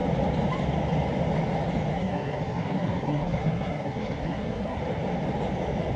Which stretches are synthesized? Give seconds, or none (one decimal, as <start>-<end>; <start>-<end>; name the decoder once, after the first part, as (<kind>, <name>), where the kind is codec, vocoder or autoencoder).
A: 1.9-4.8 (codec, SNAC)